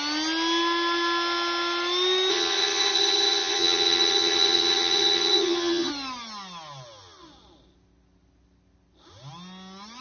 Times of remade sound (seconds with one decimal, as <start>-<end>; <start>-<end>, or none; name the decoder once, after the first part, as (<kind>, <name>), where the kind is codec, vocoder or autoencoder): 2.3-5.9 (vocoder, HiFi-GAN)